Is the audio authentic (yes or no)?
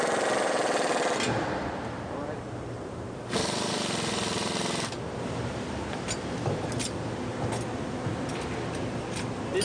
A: yes